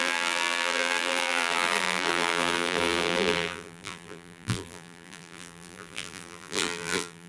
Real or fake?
fake